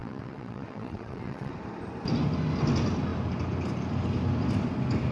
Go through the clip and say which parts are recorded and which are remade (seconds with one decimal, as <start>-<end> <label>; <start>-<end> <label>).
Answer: 0.0-1.5 remade; 1.5-5.1 recorded